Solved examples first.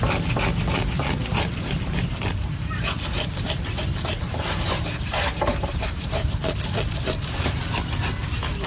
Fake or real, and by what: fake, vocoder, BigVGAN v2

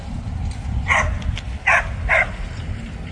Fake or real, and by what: real